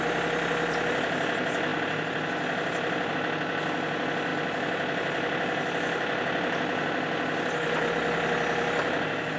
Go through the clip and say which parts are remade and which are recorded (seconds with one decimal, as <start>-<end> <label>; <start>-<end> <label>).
0.0-9.4 recorded

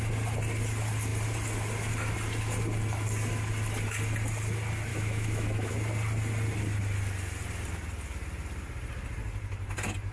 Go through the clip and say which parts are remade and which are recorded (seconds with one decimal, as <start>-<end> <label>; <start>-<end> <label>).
0.0-4.9 recorded; 4.9-5.7 remade; 5.7-10.1 recorded